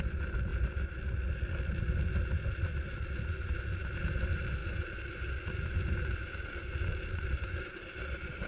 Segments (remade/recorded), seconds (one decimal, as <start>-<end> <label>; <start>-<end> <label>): 0.0-8.5 recorded